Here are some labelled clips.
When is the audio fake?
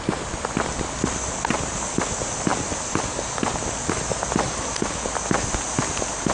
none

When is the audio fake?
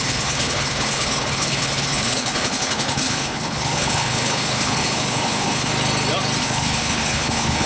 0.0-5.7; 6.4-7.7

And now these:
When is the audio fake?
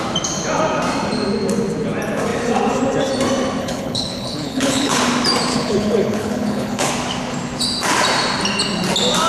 3.6-5.0; 5.5-6.9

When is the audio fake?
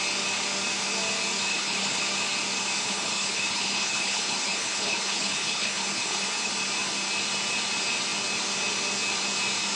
1.5-2.0; 2.8-6.5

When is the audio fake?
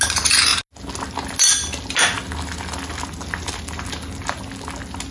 none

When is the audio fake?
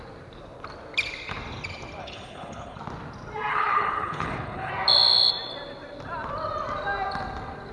2.0-2.8; 3.5-4.7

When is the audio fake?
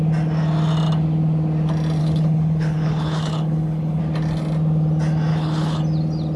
2.0-4.0; 5.3-5.8